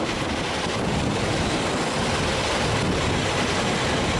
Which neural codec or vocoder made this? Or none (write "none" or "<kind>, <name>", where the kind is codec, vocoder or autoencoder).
none